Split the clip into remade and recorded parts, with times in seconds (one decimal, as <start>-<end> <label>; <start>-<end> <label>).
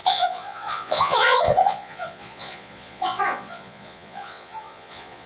0.0-5.3 remade